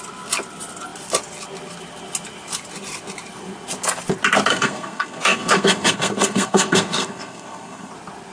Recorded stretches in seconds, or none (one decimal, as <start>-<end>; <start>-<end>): 0.0-4.5; 7.9-8.3